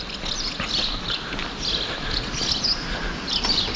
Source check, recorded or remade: recorded